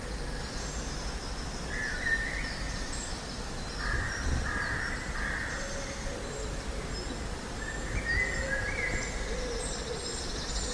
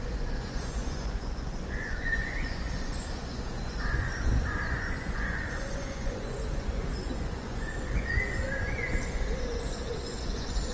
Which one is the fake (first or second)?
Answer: second